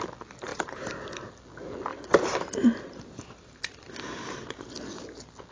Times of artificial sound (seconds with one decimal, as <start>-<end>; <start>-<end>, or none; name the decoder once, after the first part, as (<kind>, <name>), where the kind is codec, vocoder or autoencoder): 0.5-1.3 (vocoder, BigVGAN v2); 1.9-3.6